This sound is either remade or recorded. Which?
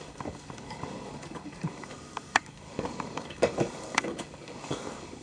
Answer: remade